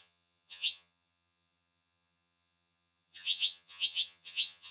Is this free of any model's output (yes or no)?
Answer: no